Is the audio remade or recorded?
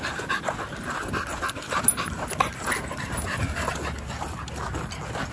recorded